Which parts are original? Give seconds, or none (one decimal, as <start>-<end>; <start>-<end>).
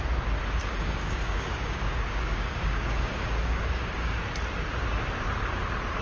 0.0-0.6; 4.2-6.0